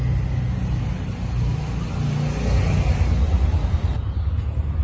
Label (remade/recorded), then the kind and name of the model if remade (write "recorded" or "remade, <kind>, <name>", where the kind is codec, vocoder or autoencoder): recorded